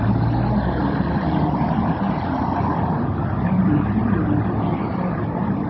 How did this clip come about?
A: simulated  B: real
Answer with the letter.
B